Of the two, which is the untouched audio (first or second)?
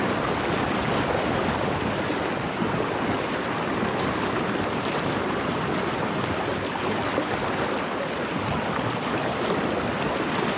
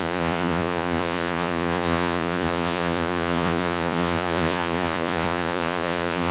first